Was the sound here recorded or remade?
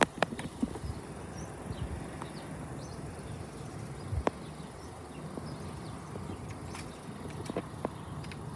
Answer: recorded